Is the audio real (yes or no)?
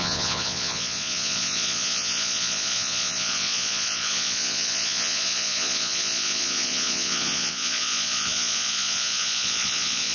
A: no